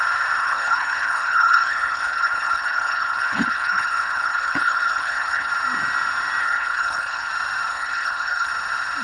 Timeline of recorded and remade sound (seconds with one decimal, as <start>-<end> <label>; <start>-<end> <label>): 0.0-0.4 recorded; 0.4-5.5 remade; 5.5-6.4 recorded; 6.4-7.3 remade; 7.3-7.7 recorded; 7.7-8.5 remade; 8.5-9.0 recorded